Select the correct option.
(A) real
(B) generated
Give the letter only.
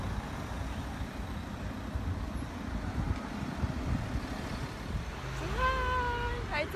A